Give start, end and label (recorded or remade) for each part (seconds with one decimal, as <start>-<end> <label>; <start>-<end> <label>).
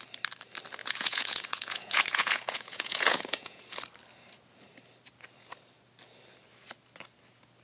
0.0-0.8 recorded; 0.8-3.6 remade; 3.6-7.6 recorded